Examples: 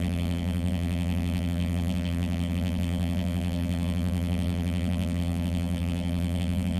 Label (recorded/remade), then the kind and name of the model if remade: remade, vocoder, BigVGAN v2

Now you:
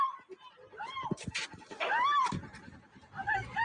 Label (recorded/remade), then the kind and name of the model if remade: remade, vocoder, BigVGAN v2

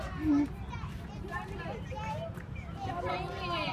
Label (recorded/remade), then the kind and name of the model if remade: remade, vocoder, BigVGAN v2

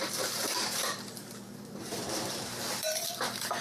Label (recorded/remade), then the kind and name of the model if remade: remade, vocoder, BigVGAN v2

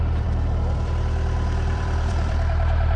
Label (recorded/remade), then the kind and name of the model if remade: remade, vocoder, BigVGAN v2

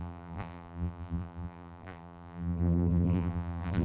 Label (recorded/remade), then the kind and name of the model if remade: remade, vocoder, BigVGAN v2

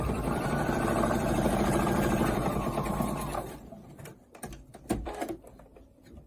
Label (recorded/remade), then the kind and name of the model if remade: remade, vocoder, BigVGAN v2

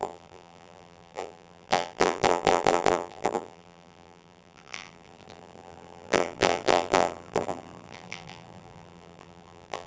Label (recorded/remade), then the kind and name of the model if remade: remade, vocoder, BigVGAN v2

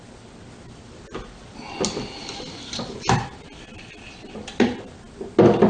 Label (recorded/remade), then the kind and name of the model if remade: recorded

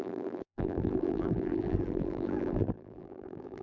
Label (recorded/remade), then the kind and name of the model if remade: remade, vocoder, BigVGAN v2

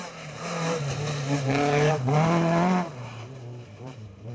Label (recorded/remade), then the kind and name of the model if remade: remade, vocoder, BigVGAN v2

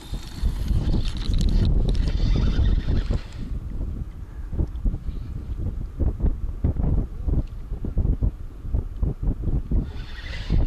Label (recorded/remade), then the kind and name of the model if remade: recorded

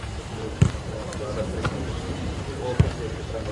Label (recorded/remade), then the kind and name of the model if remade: remade, vocoder, BigVGAN v2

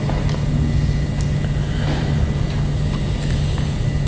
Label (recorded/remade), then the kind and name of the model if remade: recorded